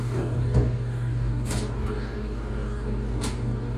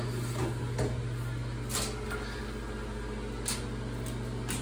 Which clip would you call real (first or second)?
second